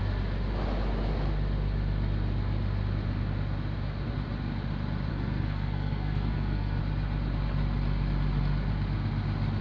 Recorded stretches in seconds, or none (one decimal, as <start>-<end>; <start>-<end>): 0.0-5.1; 6.8-9.6